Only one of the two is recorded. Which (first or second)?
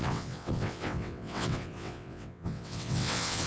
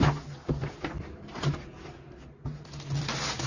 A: second